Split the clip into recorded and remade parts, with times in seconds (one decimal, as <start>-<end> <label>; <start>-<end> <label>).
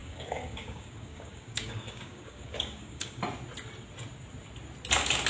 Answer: 0.0-3.2 remade; 3.2-5.3 recorded